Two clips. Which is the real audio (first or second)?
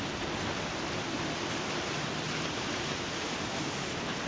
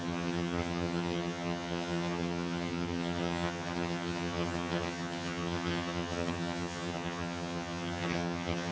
first